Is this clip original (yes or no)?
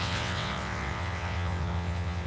no